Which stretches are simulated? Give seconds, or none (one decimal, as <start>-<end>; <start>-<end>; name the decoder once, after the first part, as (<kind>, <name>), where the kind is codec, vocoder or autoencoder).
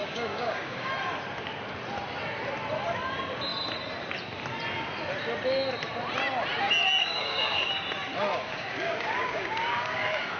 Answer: 0.0-0.9 (codec, DAC); 7.0-7.7; 8.3-10.4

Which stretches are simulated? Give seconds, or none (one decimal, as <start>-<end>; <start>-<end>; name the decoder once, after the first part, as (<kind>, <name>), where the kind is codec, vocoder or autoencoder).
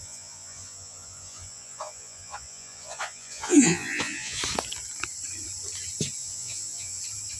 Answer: 0.0-4.4 (vocoder, Vocos); 6.2-7.0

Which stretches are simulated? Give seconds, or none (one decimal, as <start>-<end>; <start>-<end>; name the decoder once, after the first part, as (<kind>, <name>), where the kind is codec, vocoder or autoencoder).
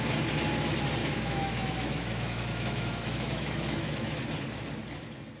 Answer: 1.0-4.2 (autoencoder, DAC-VAE)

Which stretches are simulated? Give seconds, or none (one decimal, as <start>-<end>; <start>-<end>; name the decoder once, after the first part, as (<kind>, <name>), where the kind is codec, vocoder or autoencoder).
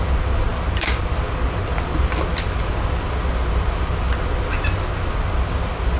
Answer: none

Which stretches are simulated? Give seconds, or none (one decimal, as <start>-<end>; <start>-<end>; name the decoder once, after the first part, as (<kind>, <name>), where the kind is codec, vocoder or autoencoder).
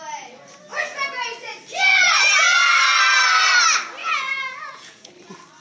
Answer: 4.0-5.1 (vocoder, Vocos)